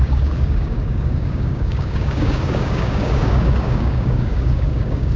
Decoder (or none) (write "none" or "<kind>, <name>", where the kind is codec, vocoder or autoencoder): codec, DAC